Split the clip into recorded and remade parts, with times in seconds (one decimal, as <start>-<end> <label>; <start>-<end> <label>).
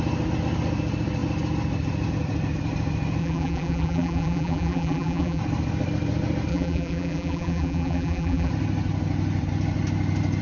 0.0-3.2 recorded; 3.2-5.4 remade; 5.4-6.5 recorded; 6.5-8.5 remade; 8.5-10.4 recorded